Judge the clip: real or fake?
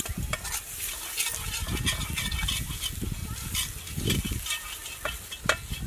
real